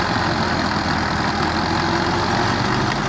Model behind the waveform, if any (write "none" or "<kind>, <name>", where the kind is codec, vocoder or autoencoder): none